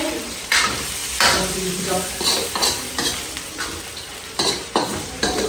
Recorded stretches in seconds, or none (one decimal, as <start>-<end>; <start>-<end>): none